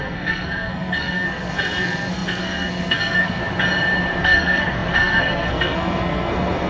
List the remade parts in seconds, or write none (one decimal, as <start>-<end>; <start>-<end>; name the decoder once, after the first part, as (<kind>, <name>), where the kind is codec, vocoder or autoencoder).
0.0-3.4 (codec, SNAC); 4.2-6.7